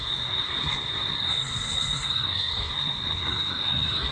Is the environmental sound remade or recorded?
remade